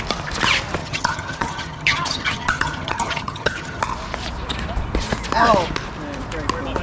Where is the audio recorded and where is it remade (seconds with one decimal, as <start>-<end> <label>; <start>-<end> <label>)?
0.0-0.8 recorded; 0.8-3.8 remade; 3.8-6.8 recorded